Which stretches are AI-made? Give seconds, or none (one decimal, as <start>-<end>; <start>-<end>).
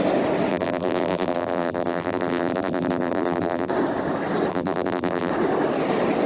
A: 0.5-3.7; 4.5-5.3